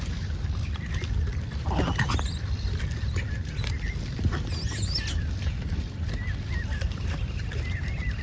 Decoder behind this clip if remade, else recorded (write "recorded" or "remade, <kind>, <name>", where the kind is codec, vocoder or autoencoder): recorded